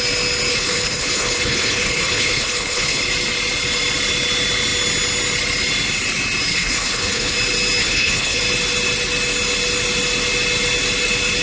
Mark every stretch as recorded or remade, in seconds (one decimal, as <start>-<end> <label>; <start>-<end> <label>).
0.0-0.5 recorded; 0.5-3.0 remade; 3.0-6.5 recorded; 6.5-7.3 remade; 7.3-7.8 recorded; 7.8-8.4 remade; 8.4-11.4 recorded